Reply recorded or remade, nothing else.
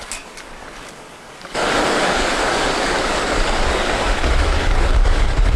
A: remade